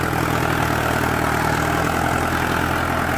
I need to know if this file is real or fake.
real